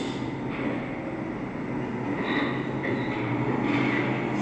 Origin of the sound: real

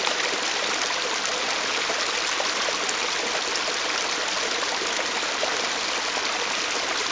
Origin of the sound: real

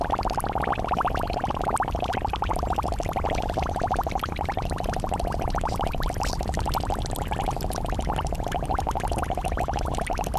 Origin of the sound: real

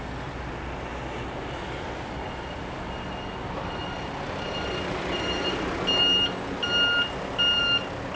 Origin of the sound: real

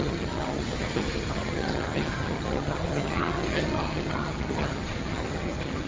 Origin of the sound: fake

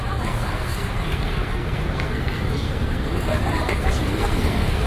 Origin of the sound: fake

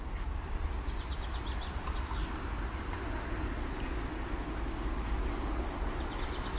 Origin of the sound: real